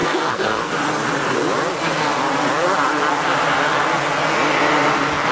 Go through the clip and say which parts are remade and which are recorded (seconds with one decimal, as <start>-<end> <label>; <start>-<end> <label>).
0.0-0.7 remade; 0.7-5.3 recorded